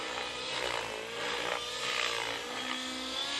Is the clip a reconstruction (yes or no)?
no